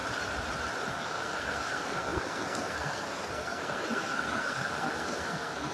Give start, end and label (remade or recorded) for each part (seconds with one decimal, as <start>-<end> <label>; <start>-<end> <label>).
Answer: 0.0-0.9 recorded; 0.9-5.7 remade